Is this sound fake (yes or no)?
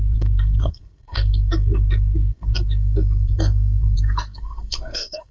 yes